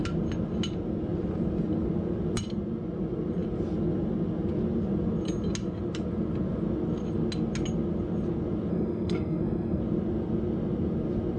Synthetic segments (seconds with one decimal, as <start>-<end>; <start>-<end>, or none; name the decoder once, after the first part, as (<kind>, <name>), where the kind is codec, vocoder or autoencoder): 8.7-9.8 (codec, SNAC)